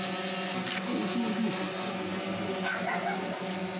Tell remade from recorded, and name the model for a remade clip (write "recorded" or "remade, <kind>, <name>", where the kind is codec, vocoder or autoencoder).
recorded